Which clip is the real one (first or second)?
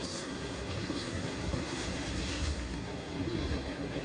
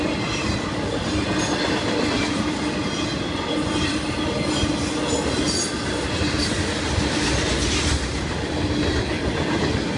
second